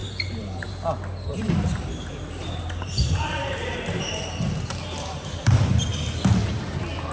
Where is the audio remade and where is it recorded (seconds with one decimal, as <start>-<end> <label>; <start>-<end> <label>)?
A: 0.0-0.7 remade; 0.7-1.3 recorded; 1.3-5.6 remade; 5.6-7.1 recorded